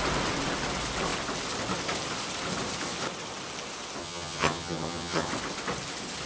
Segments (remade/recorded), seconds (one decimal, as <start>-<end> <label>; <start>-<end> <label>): 0.0-4.0 recorded; 4.0-5.3 remade; 5.3-6.3 recorded